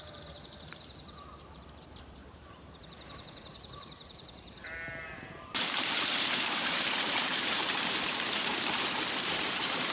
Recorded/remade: remade